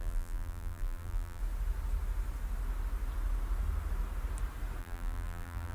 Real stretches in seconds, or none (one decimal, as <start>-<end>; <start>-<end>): 1.4-4.8